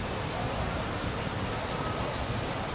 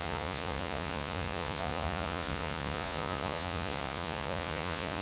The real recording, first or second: first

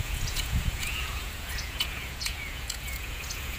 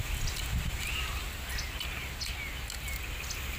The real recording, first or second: second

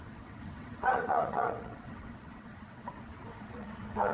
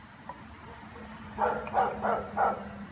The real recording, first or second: second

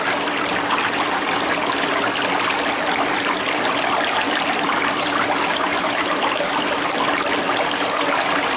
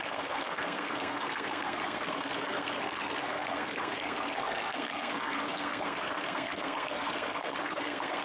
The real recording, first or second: first